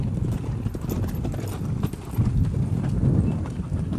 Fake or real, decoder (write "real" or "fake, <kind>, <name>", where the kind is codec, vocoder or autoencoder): real